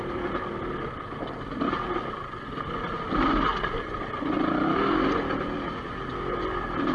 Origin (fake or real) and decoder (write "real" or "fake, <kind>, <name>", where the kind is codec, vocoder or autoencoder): real